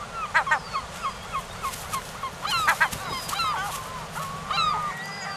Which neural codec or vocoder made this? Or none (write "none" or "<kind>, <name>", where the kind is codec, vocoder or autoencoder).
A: none